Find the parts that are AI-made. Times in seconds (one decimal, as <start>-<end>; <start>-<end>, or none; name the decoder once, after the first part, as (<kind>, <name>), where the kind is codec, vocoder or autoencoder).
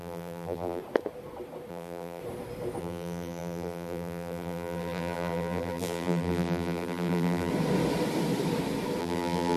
0.0-0.8 (vocoder, BigVGAN v2); 1.7-2.2; 2.8-7.5; 9.0-9.6